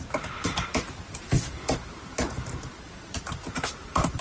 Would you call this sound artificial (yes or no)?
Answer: yes